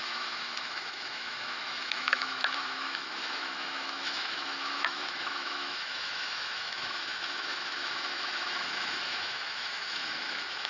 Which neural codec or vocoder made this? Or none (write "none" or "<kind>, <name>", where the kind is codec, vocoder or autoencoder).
autoencoder, DAC-VAE